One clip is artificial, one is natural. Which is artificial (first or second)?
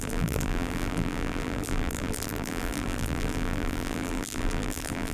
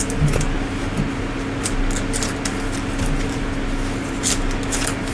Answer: first